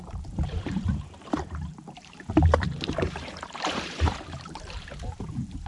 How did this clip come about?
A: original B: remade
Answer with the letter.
B